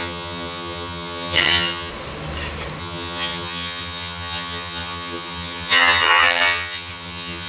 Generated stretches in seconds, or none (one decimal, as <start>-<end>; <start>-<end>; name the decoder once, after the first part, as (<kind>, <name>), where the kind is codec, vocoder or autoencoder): 0.0-1.9 (vocoder, HiFi-GAN); 2.8-7.5

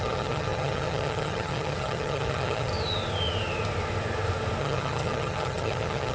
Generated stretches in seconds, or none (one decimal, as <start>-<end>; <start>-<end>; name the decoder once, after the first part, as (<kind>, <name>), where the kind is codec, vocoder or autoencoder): 0.0-2.7 (vocoder, HiFi-GAN); 4.6-6.1

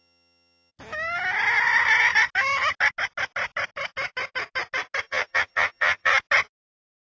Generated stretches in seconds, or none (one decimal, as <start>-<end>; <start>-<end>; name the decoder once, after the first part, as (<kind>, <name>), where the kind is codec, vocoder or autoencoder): 0.0-0.7 (vocoder, HiFi-GAN); 5.0-6.1

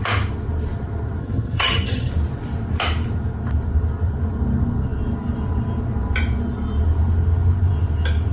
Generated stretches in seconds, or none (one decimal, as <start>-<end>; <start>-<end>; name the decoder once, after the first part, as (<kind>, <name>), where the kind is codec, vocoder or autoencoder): 1.2-2.1 (vocoder, HiFi-GAN)

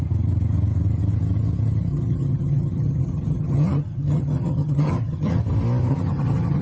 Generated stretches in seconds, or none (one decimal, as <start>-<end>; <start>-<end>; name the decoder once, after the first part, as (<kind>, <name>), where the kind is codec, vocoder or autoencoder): 1.9-5.4 (vocoder, HiFi-GAN); 5.9-6.6

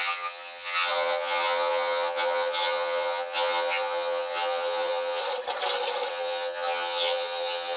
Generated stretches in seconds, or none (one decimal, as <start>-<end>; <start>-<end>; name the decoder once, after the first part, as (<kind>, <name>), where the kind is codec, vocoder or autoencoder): 0.0-5.2 (vocoder, HiFi-GAN); 6.1-7.8

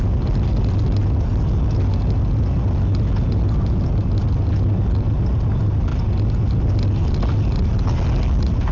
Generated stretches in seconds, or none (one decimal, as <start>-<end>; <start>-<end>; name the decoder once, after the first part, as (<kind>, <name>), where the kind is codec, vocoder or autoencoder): none

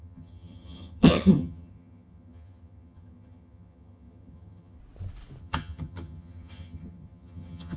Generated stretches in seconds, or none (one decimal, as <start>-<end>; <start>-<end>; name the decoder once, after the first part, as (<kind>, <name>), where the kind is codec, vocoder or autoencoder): 0.0-4.8 (vocoder, HiFi-GAN); 5.4-7.8